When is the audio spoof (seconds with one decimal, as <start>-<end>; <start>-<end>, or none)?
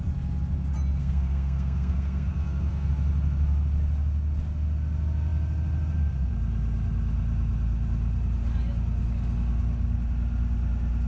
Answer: 1.0-2.9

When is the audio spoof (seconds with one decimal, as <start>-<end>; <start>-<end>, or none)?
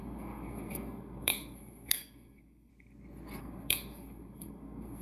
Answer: 0.0-2.7; 3.4-5.0